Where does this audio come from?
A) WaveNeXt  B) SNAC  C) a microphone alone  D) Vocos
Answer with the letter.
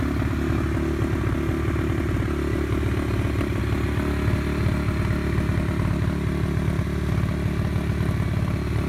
C